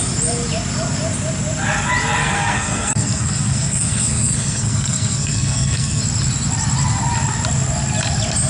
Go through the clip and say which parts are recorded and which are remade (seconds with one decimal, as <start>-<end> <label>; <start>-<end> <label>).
0.0-2.2 recorded; 2.2-6.0 remade; 6.0-8.5 recorded